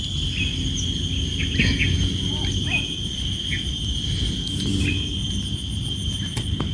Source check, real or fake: real